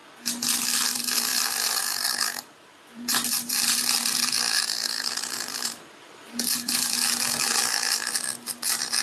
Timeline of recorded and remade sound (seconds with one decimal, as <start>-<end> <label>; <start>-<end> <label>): 0.0-0.7 recorded; 0.7-9.0 remade